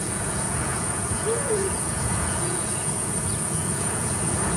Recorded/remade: remade